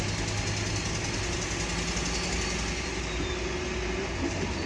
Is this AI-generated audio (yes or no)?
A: no